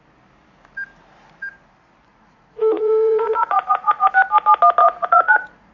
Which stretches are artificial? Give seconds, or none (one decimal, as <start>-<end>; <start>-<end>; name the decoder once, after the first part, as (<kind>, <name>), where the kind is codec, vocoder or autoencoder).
2.1-4.1 (vocoder, Vocos); 4.8-5.7